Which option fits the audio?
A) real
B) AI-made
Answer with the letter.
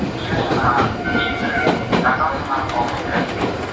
A